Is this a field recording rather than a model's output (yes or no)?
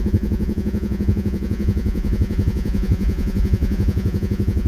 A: no